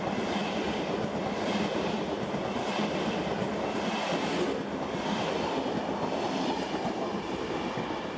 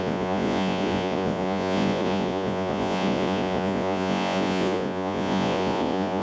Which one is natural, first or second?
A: first